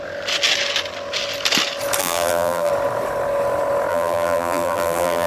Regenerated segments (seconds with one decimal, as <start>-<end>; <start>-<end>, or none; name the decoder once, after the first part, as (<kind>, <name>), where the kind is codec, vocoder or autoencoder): 2.0-2.7 (vocoder, BigVGAN v2); 3.9-5.3